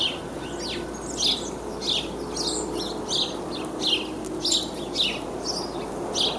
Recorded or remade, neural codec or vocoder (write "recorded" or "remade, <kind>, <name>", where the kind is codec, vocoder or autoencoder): recorded